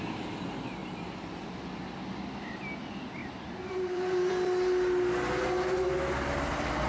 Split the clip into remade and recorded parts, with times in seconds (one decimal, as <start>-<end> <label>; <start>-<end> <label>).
0.0-3.2 recorded; 3.2-4.3 remade; 4.3-6.9 recorded